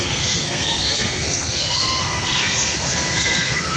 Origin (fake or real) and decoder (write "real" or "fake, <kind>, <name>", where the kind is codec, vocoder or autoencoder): fake, codec, SNAC